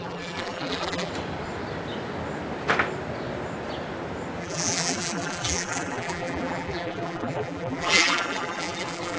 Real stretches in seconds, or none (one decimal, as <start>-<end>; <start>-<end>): 1.1-4.4